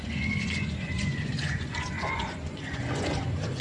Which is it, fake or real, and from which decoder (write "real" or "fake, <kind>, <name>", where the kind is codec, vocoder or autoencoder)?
fake, vocoder, Vocos